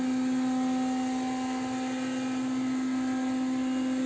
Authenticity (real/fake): real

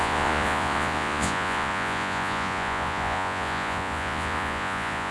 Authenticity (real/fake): fake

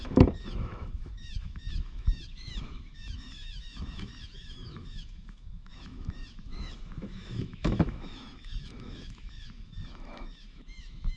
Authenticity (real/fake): fake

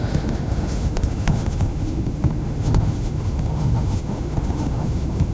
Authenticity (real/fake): fake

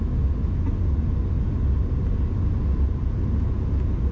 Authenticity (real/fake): real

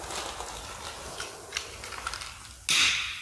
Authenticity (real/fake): real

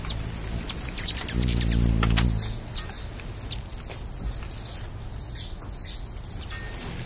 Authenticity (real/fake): real